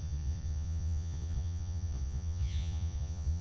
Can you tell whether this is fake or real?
fake